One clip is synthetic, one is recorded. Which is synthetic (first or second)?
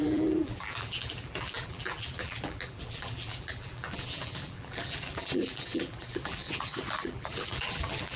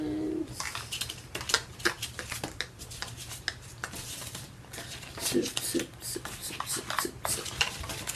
first